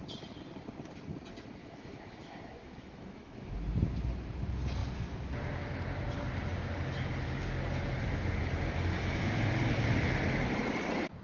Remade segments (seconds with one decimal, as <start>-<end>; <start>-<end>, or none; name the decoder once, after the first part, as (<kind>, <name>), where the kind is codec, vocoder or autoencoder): 1.6-3.5 (autoencoder, DAC-VAE)